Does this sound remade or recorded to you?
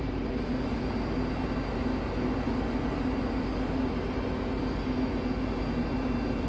recorded